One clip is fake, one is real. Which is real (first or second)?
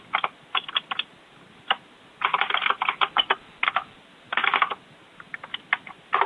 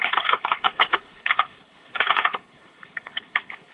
first